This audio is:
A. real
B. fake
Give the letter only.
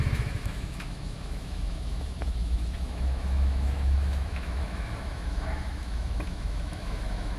B